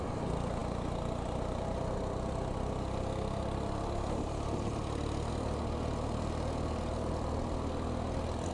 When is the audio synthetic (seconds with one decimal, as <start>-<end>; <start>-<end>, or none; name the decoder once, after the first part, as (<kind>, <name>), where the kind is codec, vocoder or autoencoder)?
none

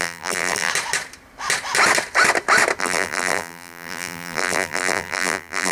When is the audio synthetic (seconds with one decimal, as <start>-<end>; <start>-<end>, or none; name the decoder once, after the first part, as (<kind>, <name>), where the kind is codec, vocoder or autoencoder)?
0.0-0.7 (vocoder, BigVGAN v2); 2.8-5.7